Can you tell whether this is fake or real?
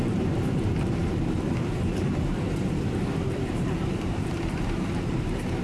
fake